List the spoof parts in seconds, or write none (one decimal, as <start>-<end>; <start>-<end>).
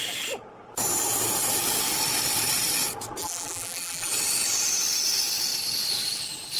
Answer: 3.2-4.1